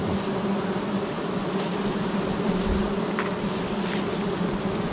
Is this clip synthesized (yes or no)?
no